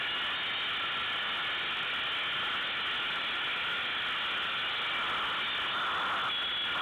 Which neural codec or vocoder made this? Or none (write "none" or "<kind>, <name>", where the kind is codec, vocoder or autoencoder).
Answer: none